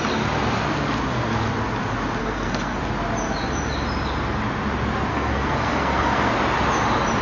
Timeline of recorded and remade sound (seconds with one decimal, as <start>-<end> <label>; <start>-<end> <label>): 0.0-2.2 recorded; 2.2-2.8 remade; 2.8-5.1 recorded; 5.1-6.3 remade; 6.3-7.2 recorded